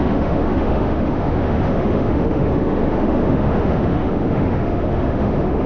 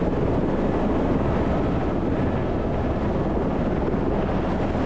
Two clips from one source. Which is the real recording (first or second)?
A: second